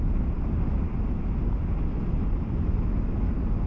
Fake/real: real